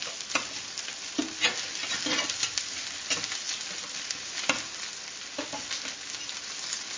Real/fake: real